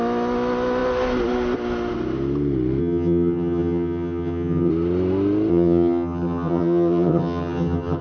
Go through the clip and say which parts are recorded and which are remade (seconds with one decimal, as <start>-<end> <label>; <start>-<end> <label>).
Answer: 0.0-2.8 recorded; 2.8-4.7 remade; 4.7-5.5 recorded; 5.5-8.0 remade